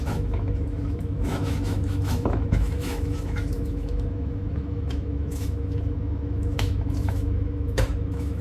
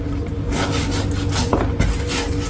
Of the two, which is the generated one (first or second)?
first